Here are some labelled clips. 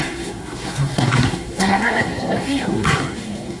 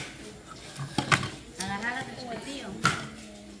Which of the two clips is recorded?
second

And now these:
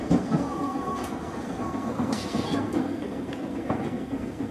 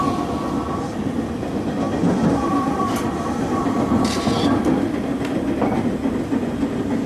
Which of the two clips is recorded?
second